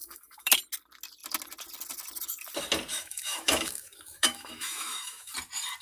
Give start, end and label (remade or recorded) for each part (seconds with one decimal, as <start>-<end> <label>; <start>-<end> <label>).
0.0-0.5 remade; 0.5-2.9 recorded; 2.9-5.3 remade; 5.3-5.8 recorded